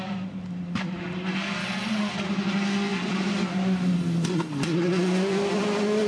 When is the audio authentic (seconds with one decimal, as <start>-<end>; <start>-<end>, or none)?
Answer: 0.0-1.6; 2.1-6.1